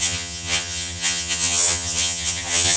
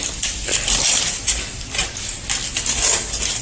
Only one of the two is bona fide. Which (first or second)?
second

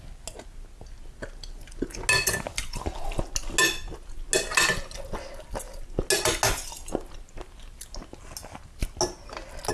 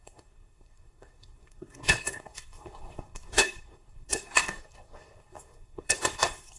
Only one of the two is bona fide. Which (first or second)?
first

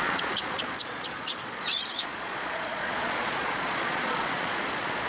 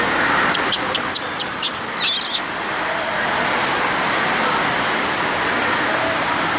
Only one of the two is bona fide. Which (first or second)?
second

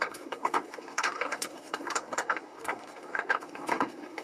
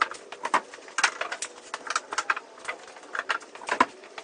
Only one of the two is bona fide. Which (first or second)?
second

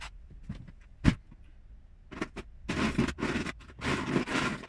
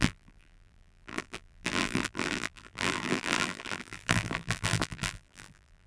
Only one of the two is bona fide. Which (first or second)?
first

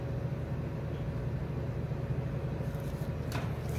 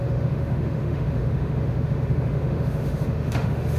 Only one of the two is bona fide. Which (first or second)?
first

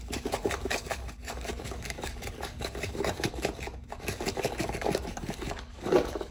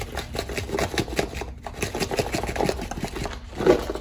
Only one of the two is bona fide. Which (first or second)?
second